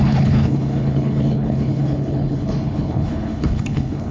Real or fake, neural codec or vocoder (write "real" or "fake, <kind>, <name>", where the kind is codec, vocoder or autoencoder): fake, codec, HILCodec